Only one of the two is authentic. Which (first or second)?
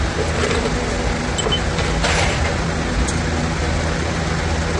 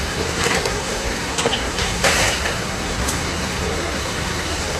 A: first